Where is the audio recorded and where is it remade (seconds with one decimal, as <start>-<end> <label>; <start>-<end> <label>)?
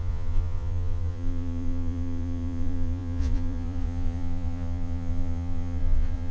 0.0-6.3 remade